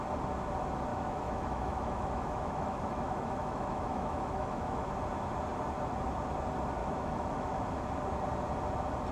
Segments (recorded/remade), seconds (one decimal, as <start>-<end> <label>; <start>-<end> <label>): 0.0-0.9 recorded; 0.9-4.9 remade; 4.9-6.8 recorded; 6.8-7.6 remade; 7.6-9.1 recorded

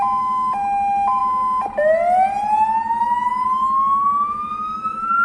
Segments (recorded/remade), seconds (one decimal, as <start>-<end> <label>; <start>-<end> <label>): 0.0-1.2 remade; 1.2-4.3 recorded; 4.3-5.2 remade

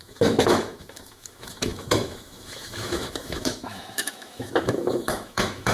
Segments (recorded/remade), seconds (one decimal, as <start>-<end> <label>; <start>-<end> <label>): 0.0-5.7 remade